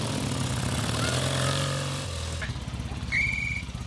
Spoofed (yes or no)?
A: no